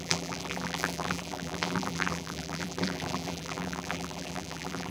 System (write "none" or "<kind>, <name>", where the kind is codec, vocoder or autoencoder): vocoder, BigVGAN v2